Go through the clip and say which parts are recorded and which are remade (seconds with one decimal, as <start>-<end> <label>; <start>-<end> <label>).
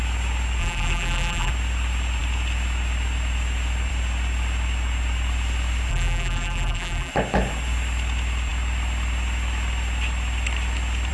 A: 0.0-0.6 recorded; 0.6-1.5 remade; 1.5-5.9 recorded; 5.9-7.1 remade; 7.1-11.1 recorded